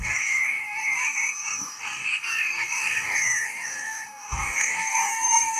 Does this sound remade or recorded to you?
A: remade